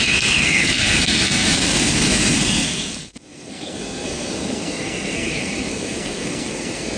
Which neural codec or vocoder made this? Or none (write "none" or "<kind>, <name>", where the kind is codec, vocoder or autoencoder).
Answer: codec, SNAC